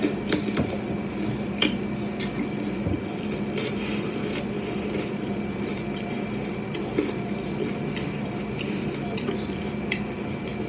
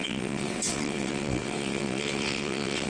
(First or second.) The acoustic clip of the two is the first